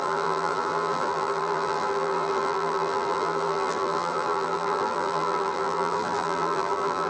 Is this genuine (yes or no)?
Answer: no